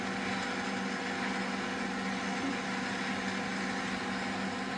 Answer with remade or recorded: recorded